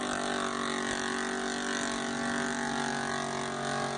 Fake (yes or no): no